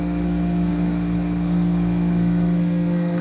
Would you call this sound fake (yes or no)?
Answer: yes